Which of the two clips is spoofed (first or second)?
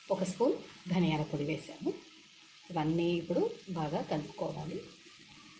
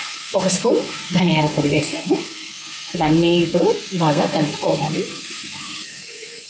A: second